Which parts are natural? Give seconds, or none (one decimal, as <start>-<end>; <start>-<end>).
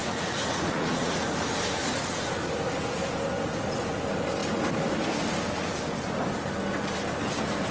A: 1.2-1.8; 2.5-7.7